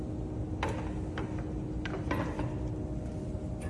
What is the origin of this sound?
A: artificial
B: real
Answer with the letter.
B